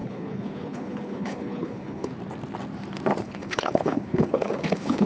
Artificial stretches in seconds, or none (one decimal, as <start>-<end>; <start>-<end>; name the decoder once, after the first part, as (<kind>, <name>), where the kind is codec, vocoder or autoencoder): 0.0-2.1 (codec, HILCodec); 3.2-5.1